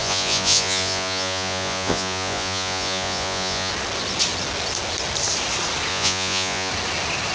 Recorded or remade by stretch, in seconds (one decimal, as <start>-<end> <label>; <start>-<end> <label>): 0.0-3.7 remade; 3.7-5.9 recorded; 5.9-6.7 remade; 6.7-7.3 recorded